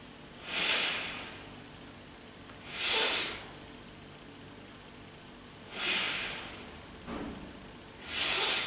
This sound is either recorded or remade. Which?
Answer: recorded